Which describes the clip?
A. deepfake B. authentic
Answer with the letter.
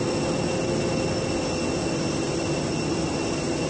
B